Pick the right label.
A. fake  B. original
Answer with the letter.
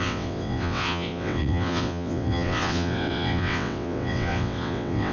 A